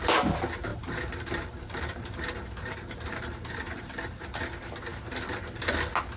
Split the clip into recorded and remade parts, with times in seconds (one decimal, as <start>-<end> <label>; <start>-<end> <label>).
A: 0.0-0.7 recorded; 0.7-4.4 remade; 4.4-6.2 recorded